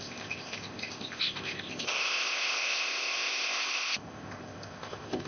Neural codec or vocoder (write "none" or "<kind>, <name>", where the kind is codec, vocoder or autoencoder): codec, ZipCodec